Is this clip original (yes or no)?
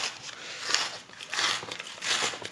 yes